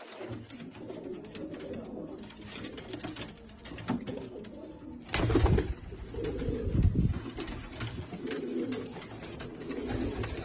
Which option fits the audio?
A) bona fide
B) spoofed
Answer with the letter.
A